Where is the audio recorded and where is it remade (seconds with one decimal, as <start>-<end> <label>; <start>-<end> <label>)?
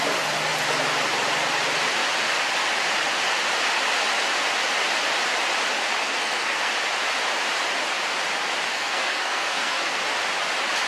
0.0-6.0 recorded; 6.0-6.7 remade; 6.7-8.7 recorded; 8.7-10.0 remade; 10.0-10.9 recorded